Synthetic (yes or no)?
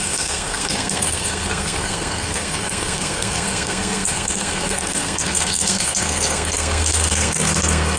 yes